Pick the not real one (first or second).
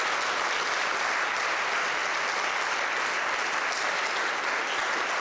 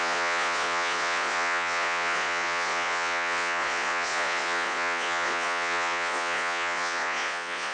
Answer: second